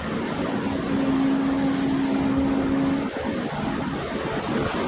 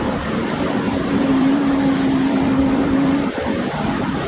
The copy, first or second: second